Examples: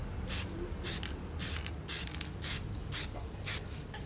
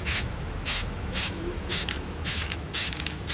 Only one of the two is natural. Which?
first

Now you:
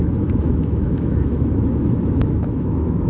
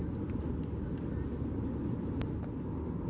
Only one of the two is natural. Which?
second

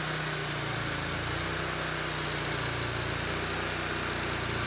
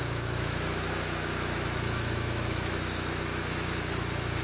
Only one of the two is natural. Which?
first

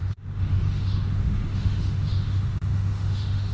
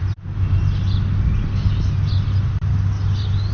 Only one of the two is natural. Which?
second